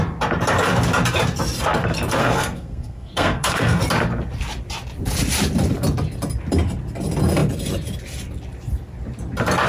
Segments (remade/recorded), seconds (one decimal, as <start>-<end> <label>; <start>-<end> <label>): 0.0-2.2 recorded; 2.2-3.8 remade; 3.8-9.7 recorded